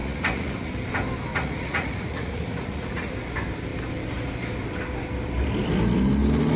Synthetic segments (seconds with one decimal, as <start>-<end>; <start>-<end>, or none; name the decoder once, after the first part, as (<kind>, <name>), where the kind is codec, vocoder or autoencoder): 0.0-0.7 (vocoder, Vocos); 1.3-3.1